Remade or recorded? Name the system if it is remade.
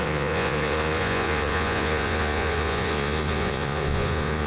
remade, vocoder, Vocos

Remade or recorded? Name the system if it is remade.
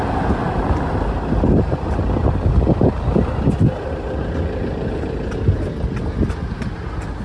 recorded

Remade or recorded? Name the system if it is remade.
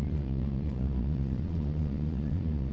remade, vocoder, Vocos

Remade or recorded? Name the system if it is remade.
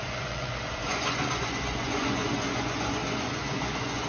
remade, vocoder, Vocos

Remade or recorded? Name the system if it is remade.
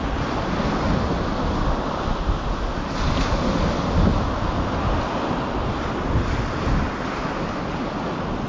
recorded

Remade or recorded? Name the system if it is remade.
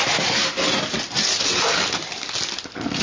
recorded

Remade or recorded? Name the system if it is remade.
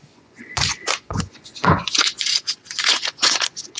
remade, vocoder, Vocos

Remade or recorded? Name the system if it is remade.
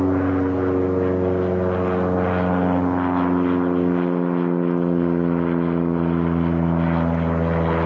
recorded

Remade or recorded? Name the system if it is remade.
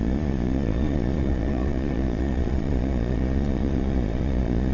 remade, vocoder, Vocos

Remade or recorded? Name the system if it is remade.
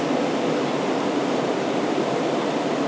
recorded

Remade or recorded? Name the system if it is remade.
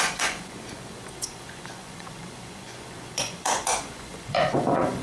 remade, vocoder, Vocos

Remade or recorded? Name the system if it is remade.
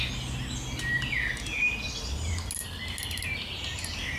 recorded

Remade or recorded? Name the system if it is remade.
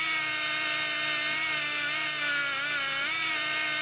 recorded